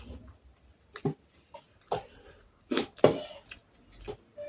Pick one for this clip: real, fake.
real